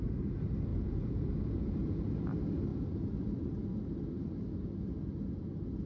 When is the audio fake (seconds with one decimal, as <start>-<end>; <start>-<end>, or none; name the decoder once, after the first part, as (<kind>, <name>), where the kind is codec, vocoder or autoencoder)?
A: 0.7-2.0 (vocoder, Vocos)